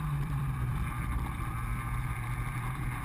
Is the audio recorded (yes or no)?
no